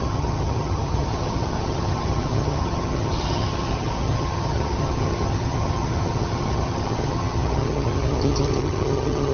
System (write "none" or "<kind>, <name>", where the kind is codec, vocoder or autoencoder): vocoder, HiFi-GAN